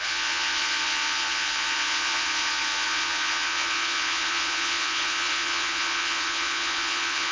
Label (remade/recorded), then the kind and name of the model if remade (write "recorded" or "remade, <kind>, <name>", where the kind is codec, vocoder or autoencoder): remade, vocoder, Vocos